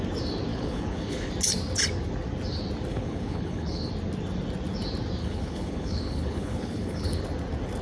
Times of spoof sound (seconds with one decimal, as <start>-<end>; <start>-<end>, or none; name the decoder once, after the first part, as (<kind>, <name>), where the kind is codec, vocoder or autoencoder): 0.5-1.3 (codec, HILCodec); 2.9-3.9; 5.2-7.2